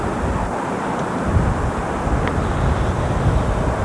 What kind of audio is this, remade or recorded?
recorded